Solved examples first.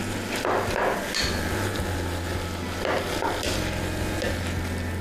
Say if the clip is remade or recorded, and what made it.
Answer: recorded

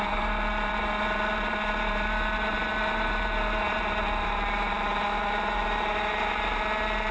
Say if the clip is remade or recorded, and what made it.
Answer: remade, vocoder, BigVGAN v2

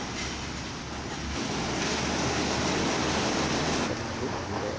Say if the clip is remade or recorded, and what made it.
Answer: recorded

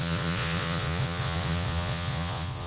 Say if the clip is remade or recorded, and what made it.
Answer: remade, vocoder, Vocos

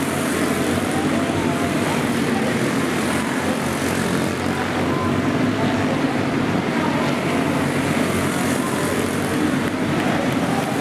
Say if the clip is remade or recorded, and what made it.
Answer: recorded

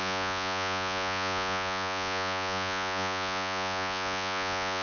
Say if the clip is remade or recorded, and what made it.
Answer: remade, vocoder, Vocos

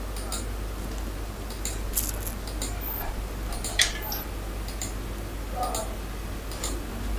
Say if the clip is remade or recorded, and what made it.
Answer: recorded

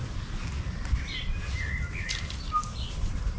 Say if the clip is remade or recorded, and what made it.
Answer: recorded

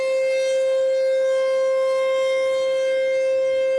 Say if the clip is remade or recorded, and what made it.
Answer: recorded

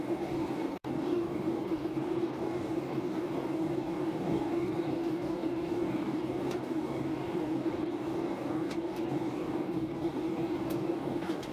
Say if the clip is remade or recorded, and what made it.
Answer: remade, codec, DAC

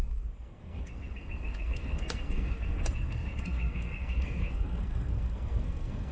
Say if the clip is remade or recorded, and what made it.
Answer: remade, codec, SNAC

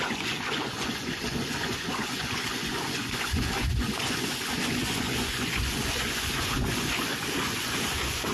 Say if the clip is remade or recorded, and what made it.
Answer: remade, vocoder, Vocos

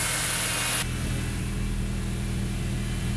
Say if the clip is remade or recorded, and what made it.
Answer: recorded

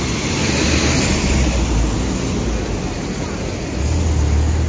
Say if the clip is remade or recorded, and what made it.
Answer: recorded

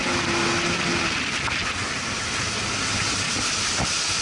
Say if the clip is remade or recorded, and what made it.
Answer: recorded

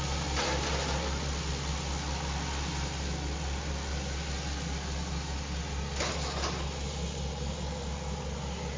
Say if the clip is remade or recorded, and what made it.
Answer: recorded